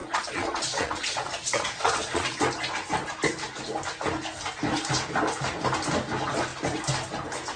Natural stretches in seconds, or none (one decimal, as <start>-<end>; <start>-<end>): 2.4-7.6